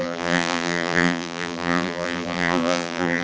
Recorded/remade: remade